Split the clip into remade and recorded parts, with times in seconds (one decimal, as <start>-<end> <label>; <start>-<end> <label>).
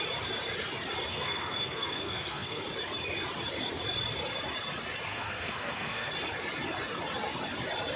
0.0-1.1 recorded; 1.1-2.6 remade; 2.6-5.1 recorded; 5.1-6.1 remade; 6.1-8.0 recorded